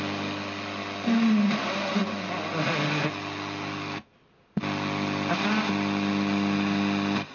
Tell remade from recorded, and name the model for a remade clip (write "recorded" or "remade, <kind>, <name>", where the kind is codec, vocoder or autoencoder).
recorded